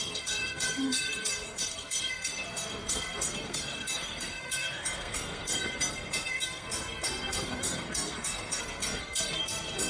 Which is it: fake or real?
fake